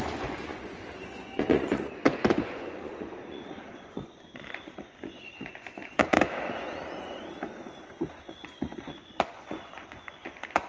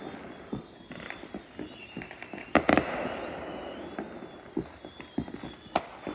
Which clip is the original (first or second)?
second